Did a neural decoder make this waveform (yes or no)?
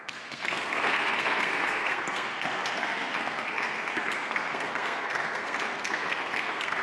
yes